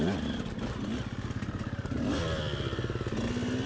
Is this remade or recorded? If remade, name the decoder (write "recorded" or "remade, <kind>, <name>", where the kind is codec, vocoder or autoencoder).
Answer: recorded